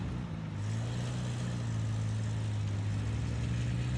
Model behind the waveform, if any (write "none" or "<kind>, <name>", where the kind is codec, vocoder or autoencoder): none